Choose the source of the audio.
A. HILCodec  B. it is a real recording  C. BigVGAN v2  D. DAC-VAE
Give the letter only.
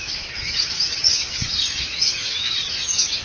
D